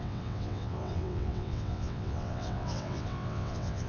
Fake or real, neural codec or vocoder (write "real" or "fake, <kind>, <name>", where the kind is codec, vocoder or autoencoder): fake, vocoder, WaveNeXt